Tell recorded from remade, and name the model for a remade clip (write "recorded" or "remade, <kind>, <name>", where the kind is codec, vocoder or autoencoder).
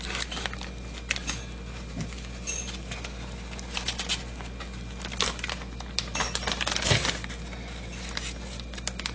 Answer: recorded